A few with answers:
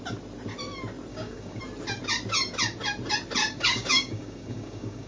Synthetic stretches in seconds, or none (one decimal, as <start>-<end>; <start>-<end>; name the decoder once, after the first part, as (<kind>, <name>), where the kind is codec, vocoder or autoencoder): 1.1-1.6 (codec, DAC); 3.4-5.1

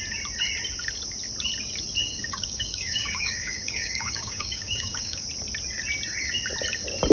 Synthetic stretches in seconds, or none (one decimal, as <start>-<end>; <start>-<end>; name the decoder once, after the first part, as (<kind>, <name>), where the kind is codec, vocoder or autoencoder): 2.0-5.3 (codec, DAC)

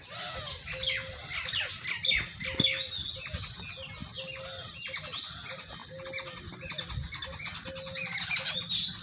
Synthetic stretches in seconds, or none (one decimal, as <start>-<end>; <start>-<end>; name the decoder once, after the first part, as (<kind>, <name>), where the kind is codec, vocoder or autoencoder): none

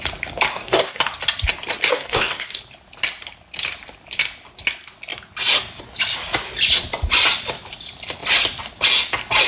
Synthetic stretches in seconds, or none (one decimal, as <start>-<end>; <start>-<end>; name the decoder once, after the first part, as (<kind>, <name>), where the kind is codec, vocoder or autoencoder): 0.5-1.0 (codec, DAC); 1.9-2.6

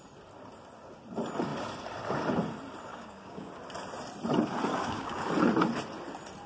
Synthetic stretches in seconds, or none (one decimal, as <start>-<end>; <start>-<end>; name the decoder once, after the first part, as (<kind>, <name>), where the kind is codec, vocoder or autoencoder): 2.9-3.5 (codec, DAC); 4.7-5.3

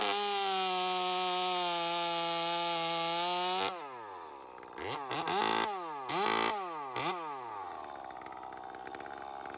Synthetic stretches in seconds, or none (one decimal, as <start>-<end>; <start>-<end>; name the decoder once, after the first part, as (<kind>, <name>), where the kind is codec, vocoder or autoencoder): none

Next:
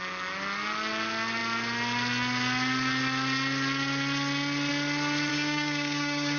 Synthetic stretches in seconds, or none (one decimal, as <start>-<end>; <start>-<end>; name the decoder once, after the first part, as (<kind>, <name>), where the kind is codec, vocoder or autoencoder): 5.3-6.4 (codec, DAC)